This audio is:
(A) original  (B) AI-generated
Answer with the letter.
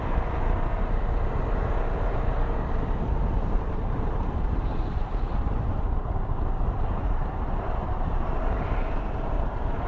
B